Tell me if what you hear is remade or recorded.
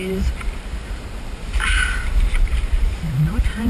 remade